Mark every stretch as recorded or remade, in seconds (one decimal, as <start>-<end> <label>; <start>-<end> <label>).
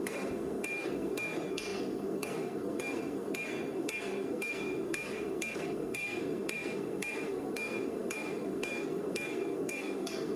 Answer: 0.0-10.4 remade